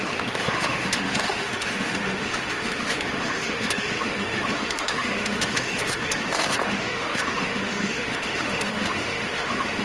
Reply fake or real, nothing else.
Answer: fake